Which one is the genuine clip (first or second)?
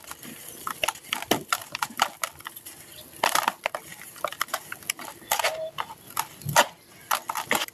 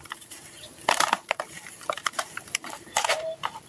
first